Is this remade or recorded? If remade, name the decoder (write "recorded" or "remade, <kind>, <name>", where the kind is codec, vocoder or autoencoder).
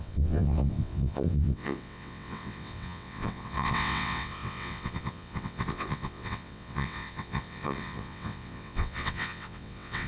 remade, vocoder, WaveNeXt